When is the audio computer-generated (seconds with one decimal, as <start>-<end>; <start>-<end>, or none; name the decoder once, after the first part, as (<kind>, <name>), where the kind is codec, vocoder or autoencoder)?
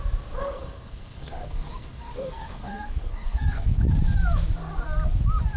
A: 0.4-3.8 (codec, SNAC)